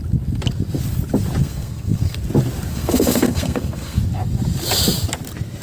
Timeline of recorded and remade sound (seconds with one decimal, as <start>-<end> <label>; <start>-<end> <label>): 0.0-1.4 recorded; 1.4-2.2 remade; 2.2-2.7 recorded; 2.7-4.0 remade; 4.0-5.6 recorded